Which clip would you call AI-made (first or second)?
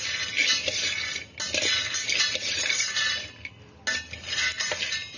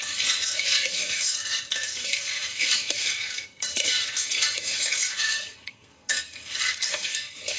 second